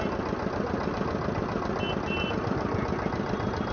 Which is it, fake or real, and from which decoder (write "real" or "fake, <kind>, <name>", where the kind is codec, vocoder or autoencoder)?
real